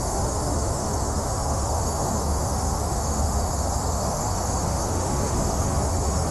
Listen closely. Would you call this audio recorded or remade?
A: remade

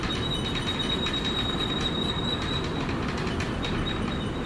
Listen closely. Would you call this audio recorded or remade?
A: recorded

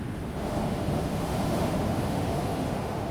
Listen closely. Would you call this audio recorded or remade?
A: remade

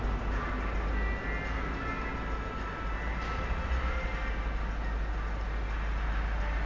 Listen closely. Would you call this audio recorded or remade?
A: recorded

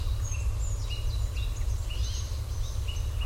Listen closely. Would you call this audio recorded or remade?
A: recorded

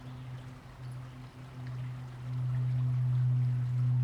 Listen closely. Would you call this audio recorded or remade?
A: recorded